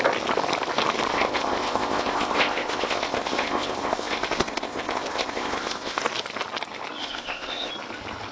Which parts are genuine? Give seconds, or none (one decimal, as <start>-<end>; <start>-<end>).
0.0-1.1; 6.0-7.0; 7.7-8.3

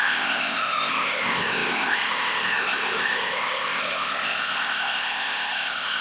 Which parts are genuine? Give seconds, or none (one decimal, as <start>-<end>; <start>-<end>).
none

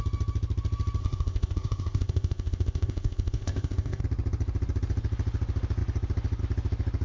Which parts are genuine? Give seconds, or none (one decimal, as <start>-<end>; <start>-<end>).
0.0-1.0; 4.0-7.0

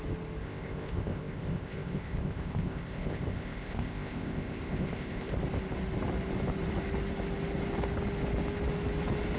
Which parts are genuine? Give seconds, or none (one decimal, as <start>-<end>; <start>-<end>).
0.0-0.4; 5.3-9.4

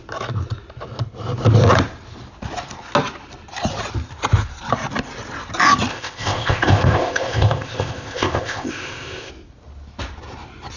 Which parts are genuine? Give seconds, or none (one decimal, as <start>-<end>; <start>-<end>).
0.0-5.9; 9.3-10.8

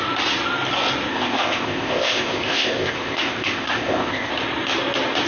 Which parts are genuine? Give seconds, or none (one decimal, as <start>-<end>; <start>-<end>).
0.0-1.1; 4.3-5.3

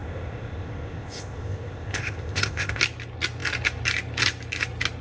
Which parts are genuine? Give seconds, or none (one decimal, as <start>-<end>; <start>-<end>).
2.8-5.0